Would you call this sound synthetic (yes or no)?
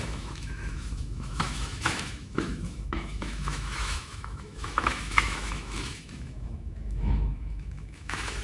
yes